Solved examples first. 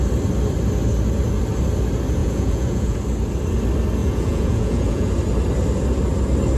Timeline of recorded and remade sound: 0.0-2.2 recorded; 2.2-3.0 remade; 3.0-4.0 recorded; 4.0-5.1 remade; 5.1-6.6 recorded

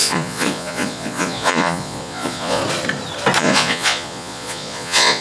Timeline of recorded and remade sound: 0.0-2.6 remade; 2.6-3.4 recorded; 3.4-5.2 remade

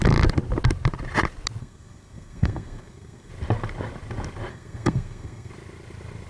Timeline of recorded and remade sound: 0.0-1.6 recorded; 1.6-3.3 remade; 3.3-4.5 recorded; 4.5-5.5 remade; 5.5-6.3 recorded

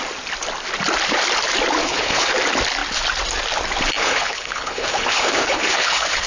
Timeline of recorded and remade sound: 0.0-1.8 recorded; 1.8-2.3 remade; 2.3-4.0 recorded; 4.0-6.3 remade